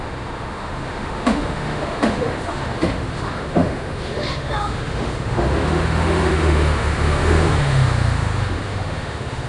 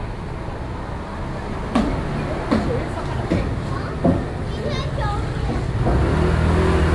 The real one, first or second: second